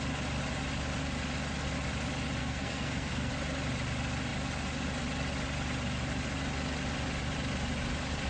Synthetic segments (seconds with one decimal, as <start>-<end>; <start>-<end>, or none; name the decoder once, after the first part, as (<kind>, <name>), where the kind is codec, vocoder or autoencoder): 2.4-3.3 (codec, SNAC)